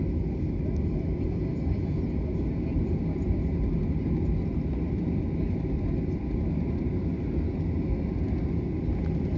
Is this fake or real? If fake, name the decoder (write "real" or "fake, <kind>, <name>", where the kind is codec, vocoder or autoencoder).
real